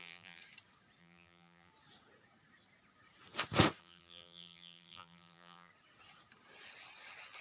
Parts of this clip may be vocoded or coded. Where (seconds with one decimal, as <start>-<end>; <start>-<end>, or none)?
0.0-0.4; 1.0-1.7; 3.8-5.7